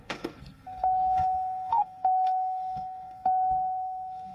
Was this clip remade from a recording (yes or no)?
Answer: yes